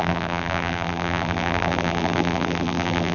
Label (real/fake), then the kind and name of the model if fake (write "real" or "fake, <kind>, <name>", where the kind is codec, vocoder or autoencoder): fake, vocoder, BigVGAN v2